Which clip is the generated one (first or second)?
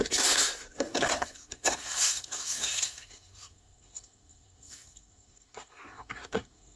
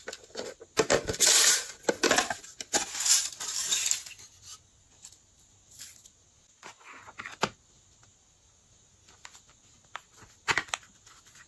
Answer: first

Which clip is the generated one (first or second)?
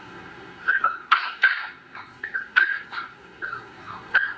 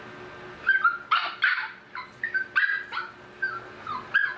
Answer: first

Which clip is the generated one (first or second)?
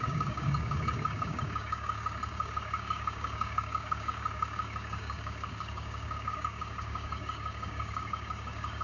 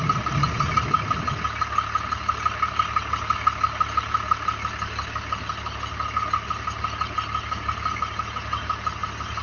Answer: first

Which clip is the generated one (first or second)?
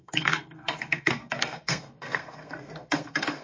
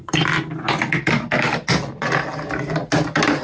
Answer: first